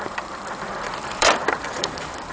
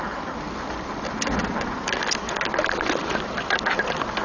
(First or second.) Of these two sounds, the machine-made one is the first